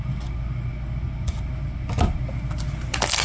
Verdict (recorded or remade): recorded